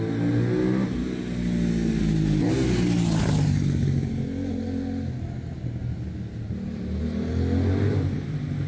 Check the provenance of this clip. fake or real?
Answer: real